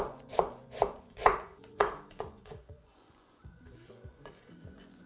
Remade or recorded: remade